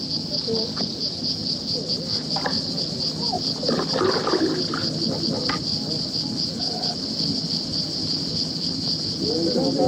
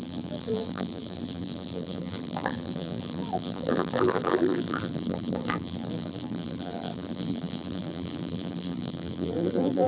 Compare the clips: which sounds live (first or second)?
first